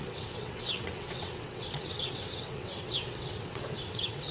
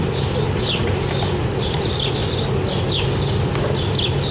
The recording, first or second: second